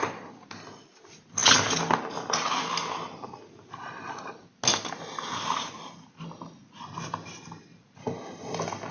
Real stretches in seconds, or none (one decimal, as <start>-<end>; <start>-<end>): 0.0-8.9